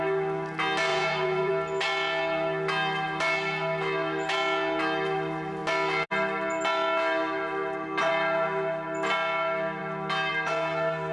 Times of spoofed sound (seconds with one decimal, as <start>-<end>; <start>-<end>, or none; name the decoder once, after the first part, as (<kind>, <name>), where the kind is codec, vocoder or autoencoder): 0.9-1.5 (vocoder, Vocos)